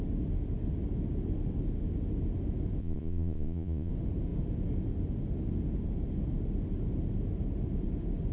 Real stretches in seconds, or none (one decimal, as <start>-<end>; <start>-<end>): 0.0-2.8; 3.9-8.3